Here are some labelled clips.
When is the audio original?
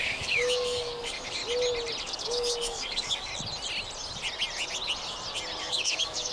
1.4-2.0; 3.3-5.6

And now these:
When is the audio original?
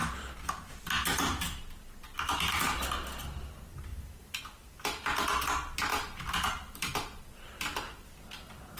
0.5-3.9; 4.4-5.9; 6.9-8.8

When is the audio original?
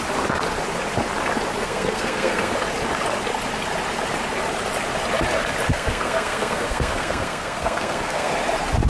0.0-1.6; 2.5-5.7; 8.3-8.9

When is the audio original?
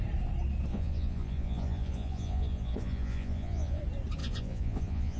0.0-0.7; 3.8-4.2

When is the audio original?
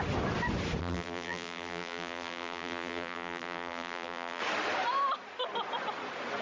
0.0-0.8; 4.4-6.4